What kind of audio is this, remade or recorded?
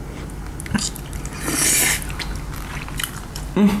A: recorded